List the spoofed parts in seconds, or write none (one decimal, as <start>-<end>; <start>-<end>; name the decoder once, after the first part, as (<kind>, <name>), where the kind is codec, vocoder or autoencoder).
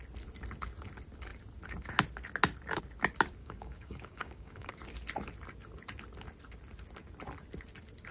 3.4-4.7 (codec, DAC)